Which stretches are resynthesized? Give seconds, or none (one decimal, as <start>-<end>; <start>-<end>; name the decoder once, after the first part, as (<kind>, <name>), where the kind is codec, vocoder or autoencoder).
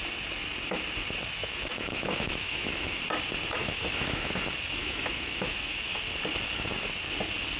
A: 1.4-3.0 (autoencoder, DAC-VAE); 3.6-4.3; 4.8-6.0